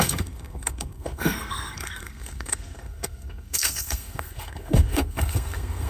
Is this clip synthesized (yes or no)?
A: yes